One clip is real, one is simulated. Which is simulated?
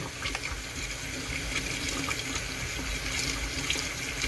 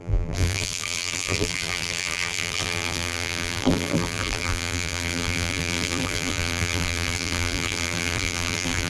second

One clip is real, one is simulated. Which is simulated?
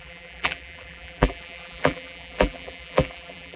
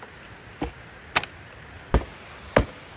first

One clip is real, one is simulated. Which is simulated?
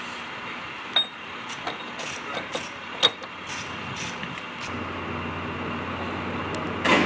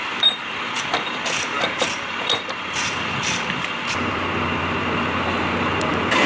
second